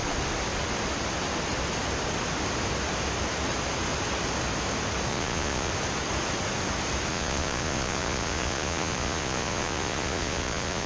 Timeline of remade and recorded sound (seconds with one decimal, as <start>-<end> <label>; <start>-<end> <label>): 0.0-5.1 recorded; 5.1-5.7 remade; 5.7-7.1 recorded; 7.1-10.9 remade